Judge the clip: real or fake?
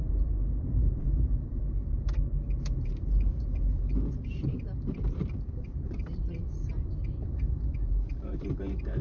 fake